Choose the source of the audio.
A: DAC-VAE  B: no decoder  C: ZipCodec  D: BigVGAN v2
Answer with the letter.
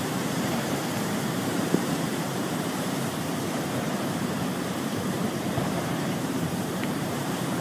D